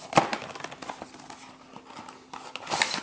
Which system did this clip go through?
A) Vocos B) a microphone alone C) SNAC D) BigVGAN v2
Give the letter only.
B